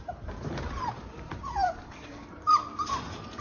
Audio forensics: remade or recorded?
remade